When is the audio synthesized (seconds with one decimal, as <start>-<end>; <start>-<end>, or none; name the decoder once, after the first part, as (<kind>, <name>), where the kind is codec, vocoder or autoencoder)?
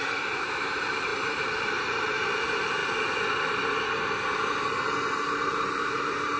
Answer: 0.0-2.8 (vocoder, BigVGAN v2); 5.4-6.4